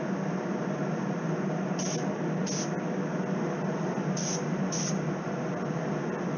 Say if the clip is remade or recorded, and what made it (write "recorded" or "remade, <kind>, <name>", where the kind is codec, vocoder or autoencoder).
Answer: recorded